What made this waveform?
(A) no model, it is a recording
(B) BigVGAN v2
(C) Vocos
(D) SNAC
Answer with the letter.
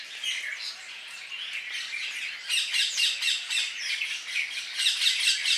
A